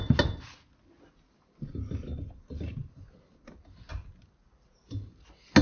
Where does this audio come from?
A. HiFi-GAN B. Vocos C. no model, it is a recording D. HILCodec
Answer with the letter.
C